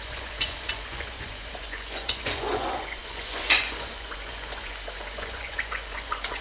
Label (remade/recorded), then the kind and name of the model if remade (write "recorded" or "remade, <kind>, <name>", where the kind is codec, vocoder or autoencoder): remade, vocoder, Vocos